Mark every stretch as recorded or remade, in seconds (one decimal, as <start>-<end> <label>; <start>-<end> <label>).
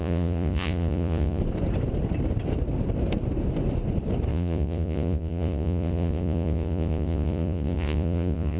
0.0-1.4 remade; 1.4-4.3 recorded; 4.3-8.6 remade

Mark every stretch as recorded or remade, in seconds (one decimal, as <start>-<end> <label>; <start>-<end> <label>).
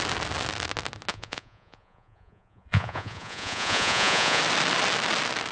0.0-1.1 recorded; 1.1-4.4 remade; 4.4-5.5 recorded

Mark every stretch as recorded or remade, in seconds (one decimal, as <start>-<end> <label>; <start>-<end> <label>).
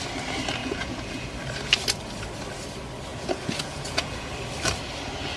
0.0-0.6 recorded; 0.6-1.3 remade; 1.3-3.1 recorded; 3.1-4.3 remade; 4.3-5.4 recorded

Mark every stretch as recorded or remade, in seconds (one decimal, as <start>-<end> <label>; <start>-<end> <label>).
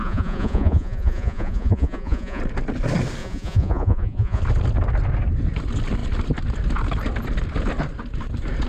0.0-2.4 remade; 2.4-3.2 recorded; 3.2-4.4 remade; 4.4-8.7 recorded